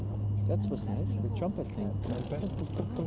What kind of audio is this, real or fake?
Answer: real